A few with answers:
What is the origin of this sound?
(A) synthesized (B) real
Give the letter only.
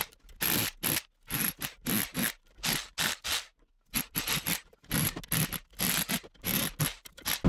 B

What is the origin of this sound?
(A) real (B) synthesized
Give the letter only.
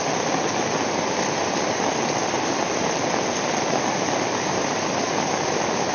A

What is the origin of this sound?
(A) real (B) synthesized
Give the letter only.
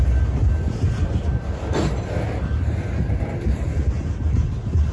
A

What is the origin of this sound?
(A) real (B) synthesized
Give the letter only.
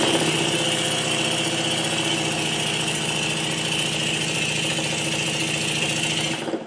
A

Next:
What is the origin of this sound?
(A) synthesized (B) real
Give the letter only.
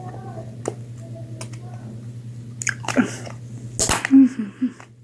B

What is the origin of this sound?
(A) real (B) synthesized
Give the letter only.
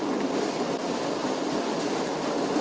A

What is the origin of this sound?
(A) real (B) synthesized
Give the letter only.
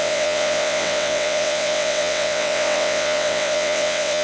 B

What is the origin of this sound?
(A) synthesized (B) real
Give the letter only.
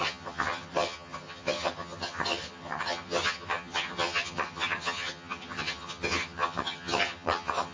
A